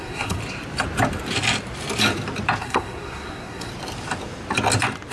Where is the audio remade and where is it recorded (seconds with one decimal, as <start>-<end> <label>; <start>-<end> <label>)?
0.0-0.4 remade; 0.4-2.6 recorded; 2.6-3.7 remade; 3.7-5.1 recorded